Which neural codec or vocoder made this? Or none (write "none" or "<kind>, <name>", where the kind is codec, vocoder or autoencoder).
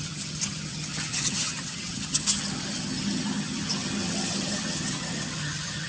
vocoder, HiFi-GAN